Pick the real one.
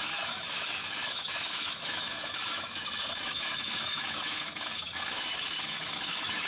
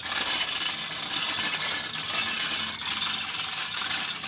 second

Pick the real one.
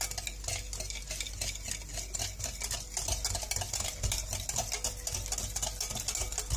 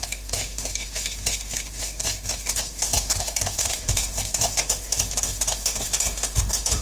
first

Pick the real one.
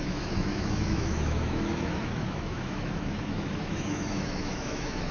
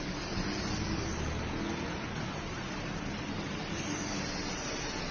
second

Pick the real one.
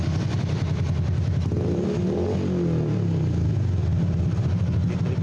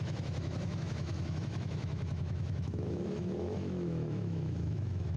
first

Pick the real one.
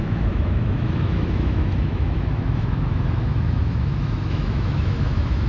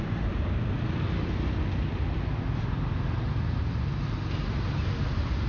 second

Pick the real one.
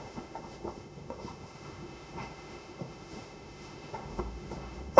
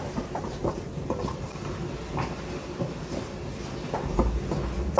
second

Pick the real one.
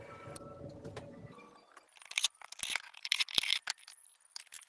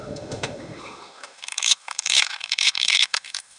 first